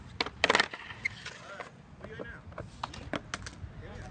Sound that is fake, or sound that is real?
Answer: real